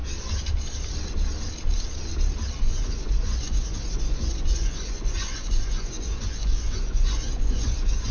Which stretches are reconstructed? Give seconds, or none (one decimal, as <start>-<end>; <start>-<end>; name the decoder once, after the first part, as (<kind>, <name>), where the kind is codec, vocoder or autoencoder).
2.6-8.1 (vocoder, Vocos)